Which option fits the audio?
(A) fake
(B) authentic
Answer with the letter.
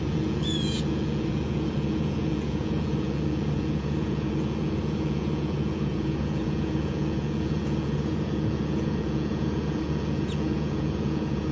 A